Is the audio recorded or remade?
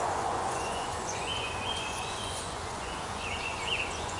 remade